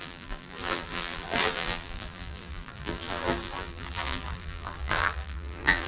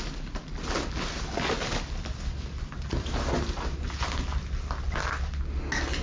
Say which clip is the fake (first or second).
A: first